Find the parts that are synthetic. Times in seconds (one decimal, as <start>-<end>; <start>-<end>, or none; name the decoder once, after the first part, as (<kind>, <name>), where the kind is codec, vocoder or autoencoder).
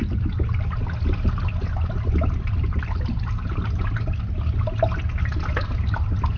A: none